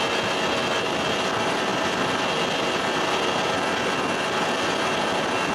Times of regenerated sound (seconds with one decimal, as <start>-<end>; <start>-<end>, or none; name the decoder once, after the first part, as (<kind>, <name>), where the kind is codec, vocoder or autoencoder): none